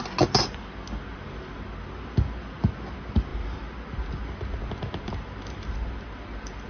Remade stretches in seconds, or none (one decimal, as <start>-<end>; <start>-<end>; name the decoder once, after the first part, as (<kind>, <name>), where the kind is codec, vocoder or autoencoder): none

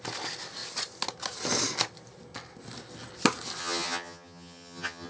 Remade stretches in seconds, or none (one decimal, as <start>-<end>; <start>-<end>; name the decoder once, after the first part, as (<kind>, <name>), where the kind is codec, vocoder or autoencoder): 3.6-5.1 (vocoder, HiFi-GAN)

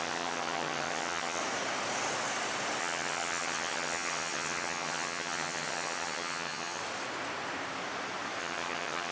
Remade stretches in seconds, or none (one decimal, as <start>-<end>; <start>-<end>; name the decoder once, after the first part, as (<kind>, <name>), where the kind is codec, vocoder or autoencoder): 0.0-1.4 (vocoder, HiFi-GAN); 2.8-6.8; 8.4-9.1